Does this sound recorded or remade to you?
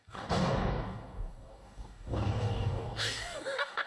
remade